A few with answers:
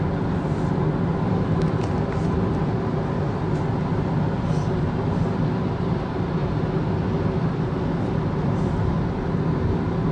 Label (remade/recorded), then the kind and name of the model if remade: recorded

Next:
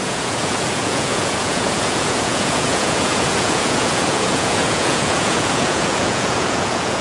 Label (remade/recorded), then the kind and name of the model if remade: remade, vocoder, Vocos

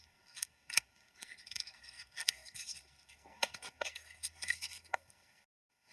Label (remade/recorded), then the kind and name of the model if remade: remade, codec, SNAC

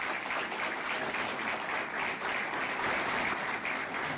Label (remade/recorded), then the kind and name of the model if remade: recorded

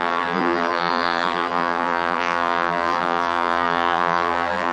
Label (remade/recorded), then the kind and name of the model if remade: remade, vocoder, BigVGAN v2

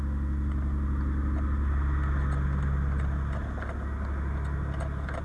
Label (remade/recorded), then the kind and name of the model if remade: recorded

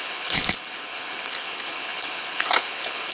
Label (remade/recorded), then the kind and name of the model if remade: remade, codec, HILCodec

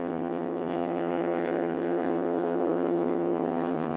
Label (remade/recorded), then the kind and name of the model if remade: remade, vocoder, HiFi-GAN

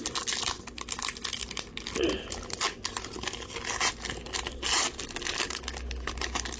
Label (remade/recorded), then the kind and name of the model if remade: recorded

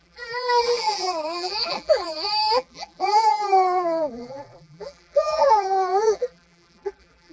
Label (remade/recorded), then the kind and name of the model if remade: remade, vocoder, BigVGAN v2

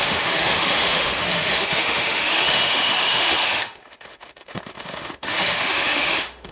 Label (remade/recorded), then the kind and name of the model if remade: remade, autoencoder, DAC-VAE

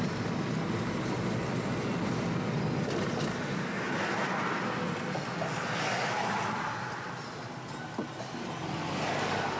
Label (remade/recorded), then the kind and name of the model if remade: recorded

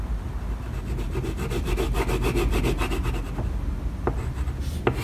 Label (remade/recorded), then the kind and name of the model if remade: recorded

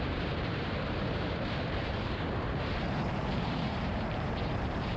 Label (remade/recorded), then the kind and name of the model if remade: remade, vocoder, BigVGAN v2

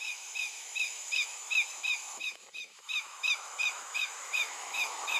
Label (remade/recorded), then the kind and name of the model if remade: remade, autoencoder, DAC-VAE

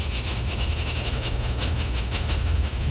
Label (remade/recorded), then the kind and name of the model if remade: remade, autoencoder, DAC-VAE